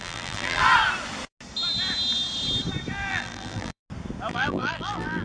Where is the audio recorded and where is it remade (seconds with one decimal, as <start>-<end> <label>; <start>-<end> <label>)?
0.0-0.6 remade; 0.6-3.1 recorded; 3.1-3.8 remade; 3.8-4.3 recorded; 4.3-5.2 remade